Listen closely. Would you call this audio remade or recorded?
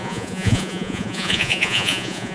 remade